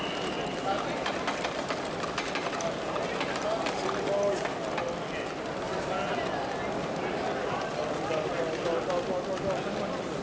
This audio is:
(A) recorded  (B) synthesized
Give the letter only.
A